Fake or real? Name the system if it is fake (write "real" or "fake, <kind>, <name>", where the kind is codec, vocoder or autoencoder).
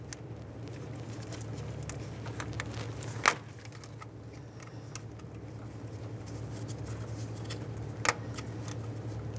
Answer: real